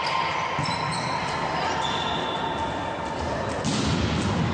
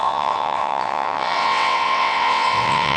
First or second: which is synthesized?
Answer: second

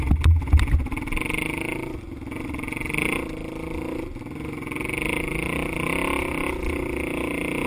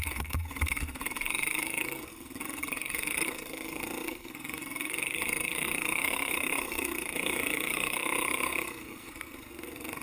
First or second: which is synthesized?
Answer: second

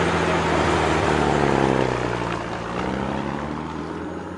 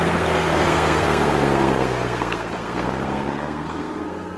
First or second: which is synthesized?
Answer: second